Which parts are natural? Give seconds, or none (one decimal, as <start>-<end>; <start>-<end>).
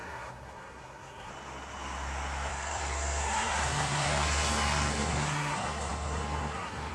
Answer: 1.3-2.5